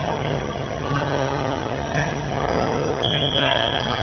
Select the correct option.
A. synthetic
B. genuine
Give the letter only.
A